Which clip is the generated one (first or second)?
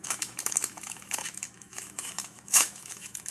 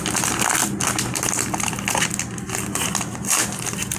first